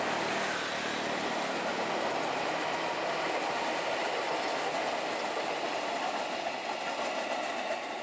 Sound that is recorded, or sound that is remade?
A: recorded